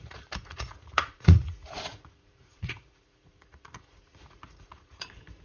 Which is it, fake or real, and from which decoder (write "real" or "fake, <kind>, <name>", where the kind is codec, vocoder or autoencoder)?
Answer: fake, vocoder, Vocos